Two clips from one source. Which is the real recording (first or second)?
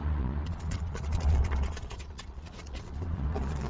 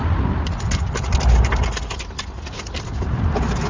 second